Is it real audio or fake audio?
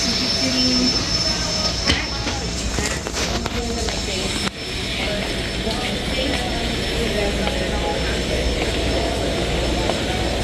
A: real